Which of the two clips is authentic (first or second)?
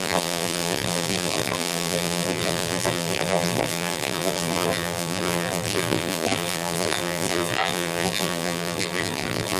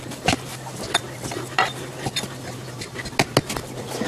second